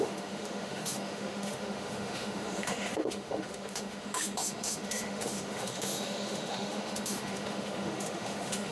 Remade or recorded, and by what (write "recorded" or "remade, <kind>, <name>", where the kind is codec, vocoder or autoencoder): remade, autoencoder, DAC-VAE